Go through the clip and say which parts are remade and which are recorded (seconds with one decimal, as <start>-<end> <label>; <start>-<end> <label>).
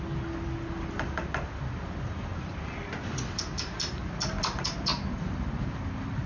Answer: 0.0-6.3 recorded